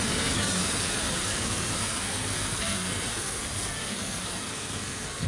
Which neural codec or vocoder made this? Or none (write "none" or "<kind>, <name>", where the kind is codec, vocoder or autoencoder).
codec, SNAC